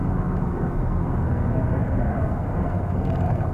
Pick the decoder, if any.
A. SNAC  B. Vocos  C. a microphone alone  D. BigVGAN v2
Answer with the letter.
A